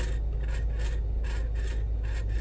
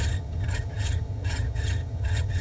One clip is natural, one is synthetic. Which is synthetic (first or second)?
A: second